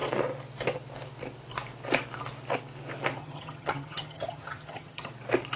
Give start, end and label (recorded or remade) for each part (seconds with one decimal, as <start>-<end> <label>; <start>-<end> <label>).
0.0-3.2 recorded; 3.2-5.1 remade; 5.1-5.6 recorded